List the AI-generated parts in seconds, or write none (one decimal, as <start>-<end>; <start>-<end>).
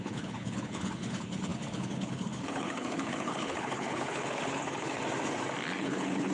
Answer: 0.0-5.0; 5.8-6.3